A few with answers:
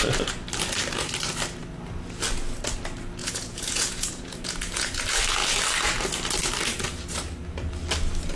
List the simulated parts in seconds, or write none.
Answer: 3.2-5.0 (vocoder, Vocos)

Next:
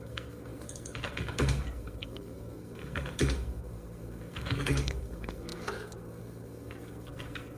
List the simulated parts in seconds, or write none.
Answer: 0.0-7.6 (codec, SNAC)

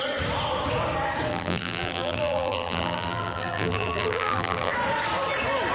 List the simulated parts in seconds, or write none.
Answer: 1.3-4.7 (vocoder, BigVGAN v2)